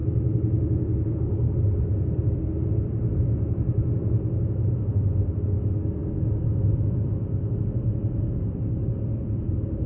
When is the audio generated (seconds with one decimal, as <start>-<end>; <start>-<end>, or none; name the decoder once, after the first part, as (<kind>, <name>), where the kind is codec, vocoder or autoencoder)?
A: none